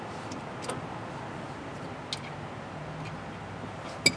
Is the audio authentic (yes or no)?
yes